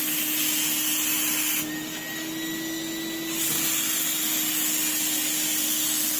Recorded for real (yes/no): yes